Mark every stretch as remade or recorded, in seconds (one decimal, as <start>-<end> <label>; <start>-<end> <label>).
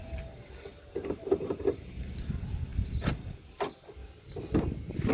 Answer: 0.0-4.0 remade; 4.0-5.1 recorded